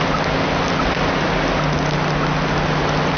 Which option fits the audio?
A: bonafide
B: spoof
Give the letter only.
A